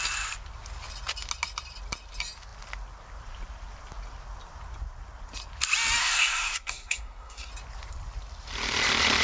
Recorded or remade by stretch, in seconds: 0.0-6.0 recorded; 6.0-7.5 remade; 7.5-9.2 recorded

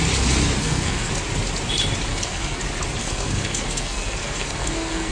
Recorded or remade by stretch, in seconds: 0.0-0.6 recorded; 0.6-1.1 remade; 1.1-2.1 recorded; 2.1-2.6 remade; 2.6-3.0 recorded; 3.0-5.1 remade

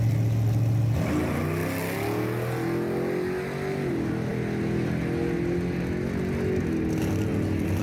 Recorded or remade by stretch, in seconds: 0.0-7.8 recorded

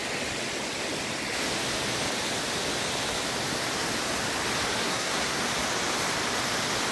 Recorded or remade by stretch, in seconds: 0.0-4.8 recorded; 4.8-5.4 remade; 5.4-6.9 recorded

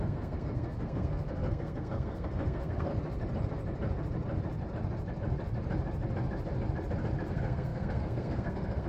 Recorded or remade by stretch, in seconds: 0.0-2.9 remade; 2.9-7.3 recorded; 7.3-8.9 remade

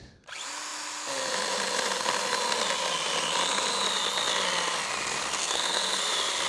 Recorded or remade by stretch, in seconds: 0.0-5.4 recorded; 5.4-6.0 remade; 6.0-6.5 recorded

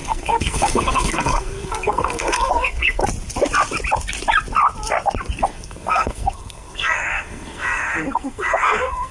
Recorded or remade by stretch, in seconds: 0.0-3.0 remade; 3.0-5.5 recorded; 5.5-9.1 remade